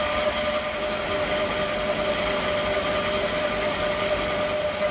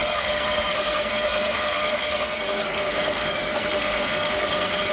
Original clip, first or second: first